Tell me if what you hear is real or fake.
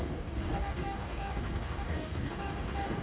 fake